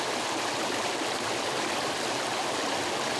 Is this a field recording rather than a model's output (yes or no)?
yes